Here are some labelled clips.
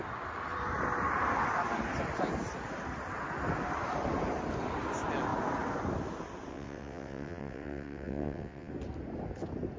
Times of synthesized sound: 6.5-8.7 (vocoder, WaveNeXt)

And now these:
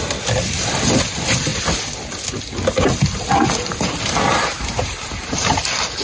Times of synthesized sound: none

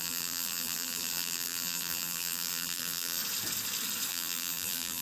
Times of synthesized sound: 0.0-3.2 (vocoder, BigVGAN v2); 4.1-5.0

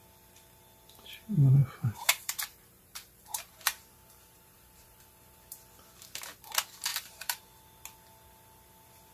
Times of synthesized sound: 1.6-5.0 (vocoder, BigVGAN v2); 6.9-7.4

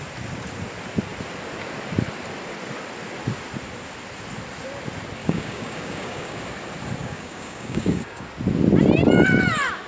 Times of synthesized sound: 5.2-6.4 (codec, DAC); 7.0-8.3

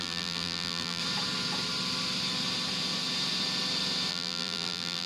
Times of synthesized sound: 0.0-1.0 (vocoder, BigVGAN v2); 4.1-5.1

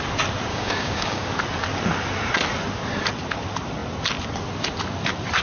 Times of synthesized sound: 0.5-1.3 (codec, DAC)

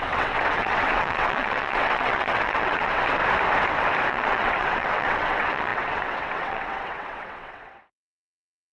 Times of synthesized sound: 0.0-3.2 (vocoder, WaveNeXt); 4.1-8.7